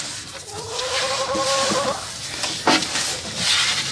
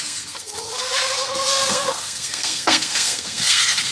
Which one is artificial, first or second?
second